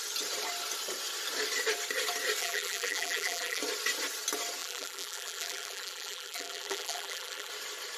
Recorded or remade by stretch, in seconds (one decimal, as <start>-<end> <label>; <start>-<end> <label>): 0.0-2.4 recorded; 2.4-3.6 remade; 3.6-4.6 recorded; 4.6-7.5 remade; 7.5-8.0 recorded